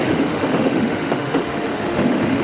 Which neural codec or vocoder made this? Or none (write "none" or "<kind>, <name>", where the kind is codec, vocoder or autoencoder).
autoencoder, DAC-VAE